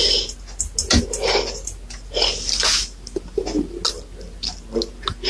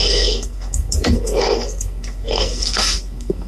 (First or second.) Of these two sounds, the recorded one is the first